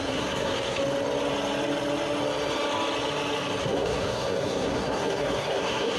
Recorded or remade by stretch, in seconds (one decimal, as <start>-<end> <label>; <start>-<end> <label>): 0.0-0.8 remade; 0.8-3.6 recorded; 3.6-6.0 remade